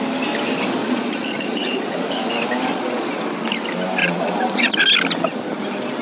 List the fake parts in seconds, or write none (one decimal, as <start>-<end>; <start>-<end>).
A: 0.8-2.1; 2.7-3.2; 4.0-4.7